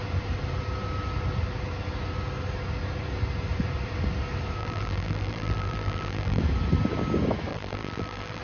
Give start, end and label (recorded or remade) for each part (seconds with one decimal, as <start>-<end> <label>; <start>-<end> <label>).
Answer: 0.0-4.6 recorded; 4.6-6.4 remade; 6.4-7.5 recorded; 7.5-8.4 remade